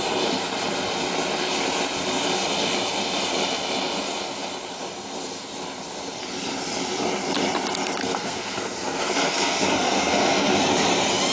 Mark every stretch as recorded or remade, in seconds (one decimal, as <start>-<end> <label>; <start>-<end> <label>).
0.0-8.0 recorded; 8.0-10.6 remade; 10.6-11.3 recorded